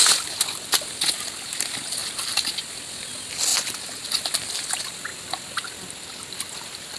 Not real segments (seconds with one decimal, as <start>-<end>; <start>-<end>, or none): none